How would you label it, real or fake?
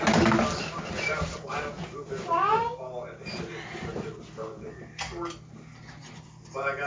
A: real